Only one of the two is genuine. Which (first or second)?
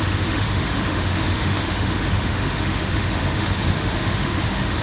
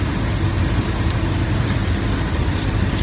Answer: second